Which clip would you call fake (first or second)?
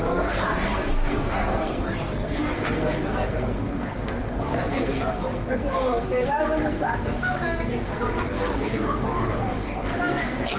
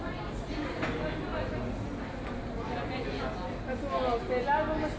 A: first